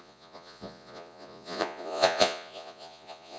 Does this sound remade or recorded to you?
remade